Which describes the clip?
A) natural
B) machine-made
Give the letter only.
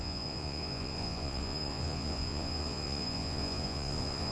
B